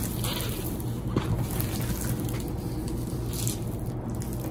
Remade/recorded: recorded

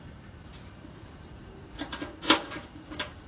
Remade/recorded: remade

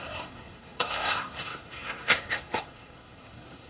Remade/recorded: remade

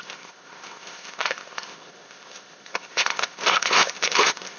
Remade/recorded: remade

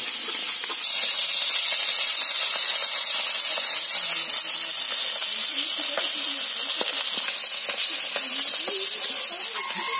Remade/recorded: recorded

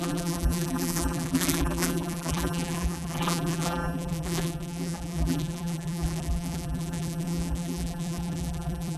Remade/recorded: remade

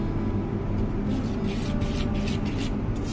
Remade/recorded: recorded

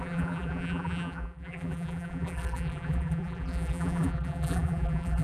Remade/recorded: remade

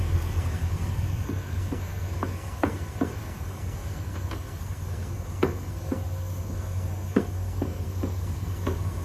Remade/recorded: remade